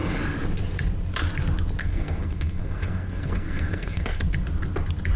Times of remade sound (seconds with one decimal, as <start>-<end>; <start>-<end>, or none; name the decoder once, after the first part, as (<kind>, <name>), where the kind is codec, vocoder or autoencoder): 1.8-4.2 (codec, SNAC)